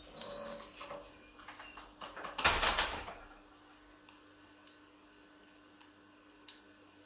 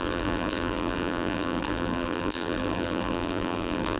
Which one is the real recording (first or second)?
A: first